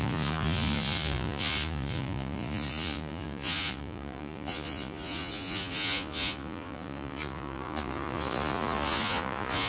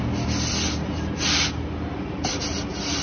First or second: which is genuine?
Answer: second